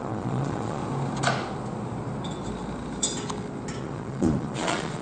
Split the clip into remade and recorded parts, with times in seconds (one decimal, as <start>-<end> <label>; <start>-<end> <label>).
0.0-0.8 remade; 0.8-3.8 recorded; 3.8-5.0 remade